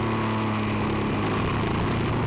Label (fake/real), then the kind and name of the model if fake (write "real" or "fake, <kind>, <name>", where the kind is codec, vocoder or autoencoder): real